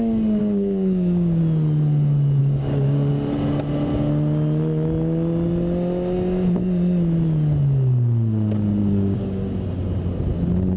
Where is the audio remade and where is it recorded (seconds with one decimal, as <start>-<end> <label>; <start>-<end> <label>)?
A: 0.0-0.4 recorded; 0.4-1.4 remade; 1.4-2.4 recorded; 2.4-3.1 remade; 3.1-8.8 recorded; 8.8-9.5 remade; 9.5-10.8 recorded